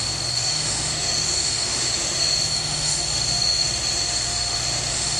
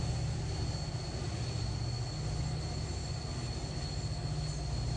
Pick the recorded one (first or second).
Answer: second